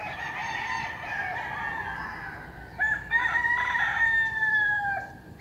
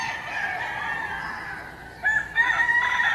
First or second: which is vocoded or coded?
first